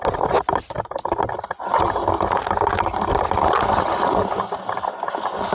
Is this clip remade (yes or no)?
no